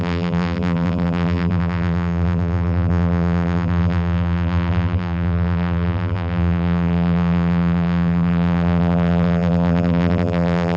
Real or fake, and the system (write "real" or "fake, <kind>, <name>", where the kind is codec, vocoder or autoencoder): fake, vocoder, BigVGAN v2